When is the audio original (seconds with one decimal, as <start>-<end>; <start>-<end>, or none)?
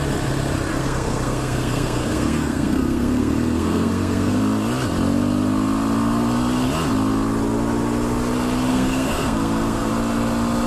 0.0-0.7; 4.4-8.7; 9.9-10.7